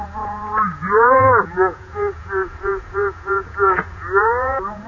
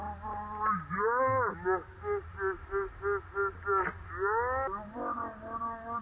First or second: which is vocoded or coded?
first